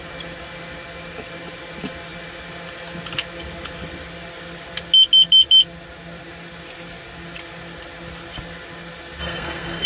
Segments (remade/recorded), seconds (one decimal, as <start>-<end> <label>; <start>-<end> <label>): 0.0-9.2 recorded; 9.2-9.9 remade